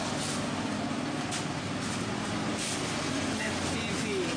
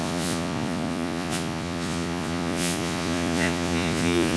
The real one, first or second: first